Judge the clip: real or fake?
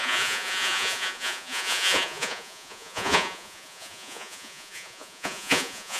fake